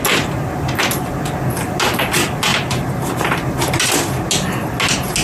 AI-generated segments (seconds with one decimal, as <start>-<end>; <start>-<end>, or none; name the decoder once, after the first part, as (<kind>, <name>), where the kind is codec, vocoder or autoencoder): none